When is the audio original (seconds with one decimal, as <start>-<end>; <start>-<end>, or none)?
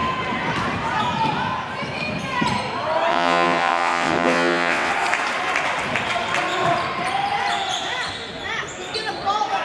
0.0-3.1; 4.9-9.6